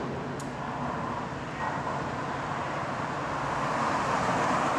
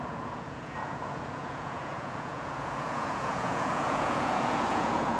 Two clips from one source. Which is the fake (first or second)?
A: second